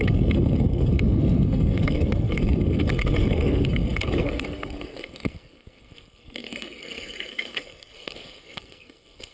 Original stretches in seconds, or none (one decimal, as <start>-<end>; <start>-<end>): none